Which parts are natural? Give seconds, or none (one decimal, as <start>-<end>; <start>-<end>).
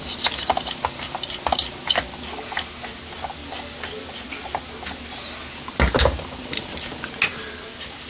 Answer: 0.0-8.1